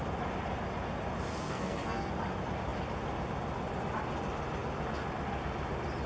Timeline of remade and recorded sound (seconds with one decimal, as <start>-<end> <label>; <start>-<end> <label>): 0.0-1.3 recorded; 1.3-2.1 remade; 2.1-6.1 recorded